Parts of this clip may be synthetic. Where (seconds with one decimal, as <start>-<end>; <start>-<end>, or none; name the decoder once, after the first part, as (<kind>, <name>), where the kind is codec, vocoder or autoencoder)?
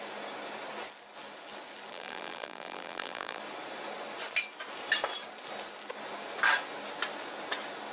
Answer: 1.9-3.4 (vocoder, BigVGAN v2)